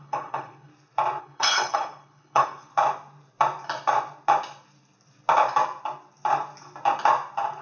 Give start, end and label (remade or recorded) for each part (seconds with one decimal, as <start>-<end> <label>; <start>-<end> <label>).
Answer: 0.0-0.7 remade; 0.7-1.2 recorded; 1.2-2.7 remade; 2.7-7.6 recorded